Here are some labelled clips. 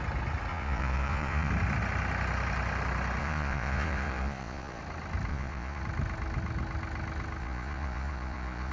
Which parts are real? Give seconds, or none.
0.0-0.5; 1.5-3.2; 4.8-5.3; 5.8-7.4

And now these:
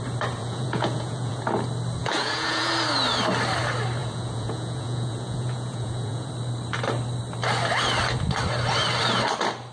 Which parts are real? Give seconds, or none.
0.0-0.4; 1.4-2.0; 2.7-4.0; 6.3-9.7

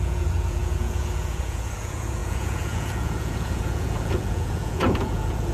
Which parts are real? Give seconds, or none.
none

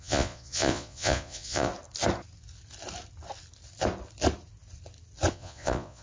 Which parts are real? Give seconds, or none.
1.7-5.3